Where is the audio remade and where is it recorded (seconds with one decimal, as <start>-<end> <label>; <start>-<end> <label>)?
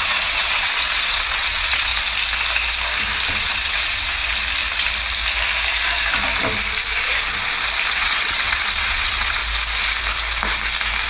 0.0-1.9 remade; 1.9-3.3 recorded; 3.3-4.2 remade; 4.2-7.9 recorded; 7.9-9.4 remade; 9.4-11.1 recorded